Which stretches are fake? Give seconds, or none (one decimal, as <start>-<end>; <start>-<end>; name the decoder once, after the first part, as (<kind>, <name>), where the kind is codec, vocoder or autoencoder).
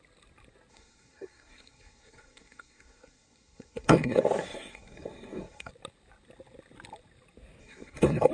0.7-5.7 (codec, SNAC); 7.6-8.3